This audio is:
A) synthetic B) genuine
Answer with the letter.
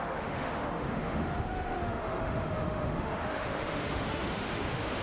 A